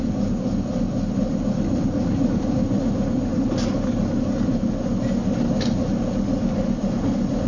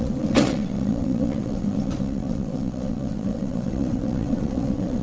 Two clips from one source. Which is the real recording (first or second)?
first